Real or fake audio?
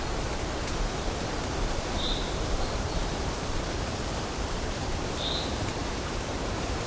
fake